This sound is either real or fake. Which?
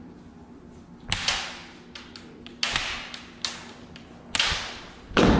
real